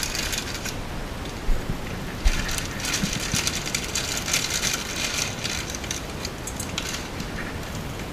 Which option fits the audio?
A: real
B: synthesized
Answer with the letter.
A